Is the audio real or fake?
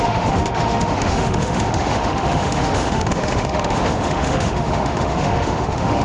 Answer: fake